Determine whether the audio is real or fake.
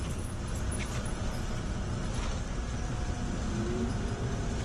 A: fake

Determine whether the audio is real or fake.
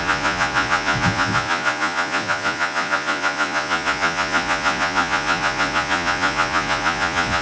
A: fake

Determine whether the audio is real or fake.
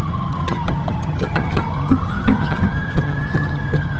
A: fake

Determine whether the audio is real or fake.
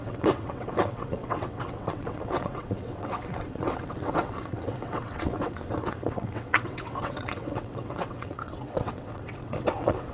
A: fake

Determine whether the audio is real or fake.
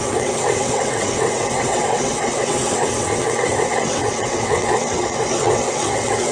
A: fake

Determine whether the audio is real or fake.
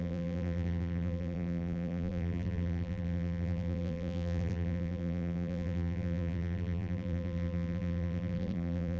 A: fake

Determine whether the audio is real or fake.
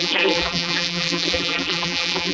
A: fake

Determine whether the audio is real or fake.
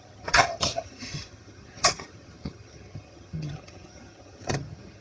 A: fake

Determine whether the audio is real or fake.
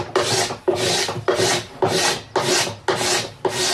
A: real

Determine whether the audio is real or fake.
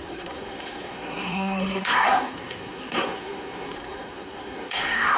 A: fake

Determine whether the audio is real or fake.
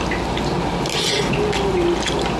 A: real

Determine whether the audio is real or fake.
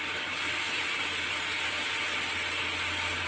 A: real